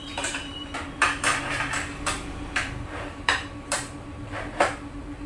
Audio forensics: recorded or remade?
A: remade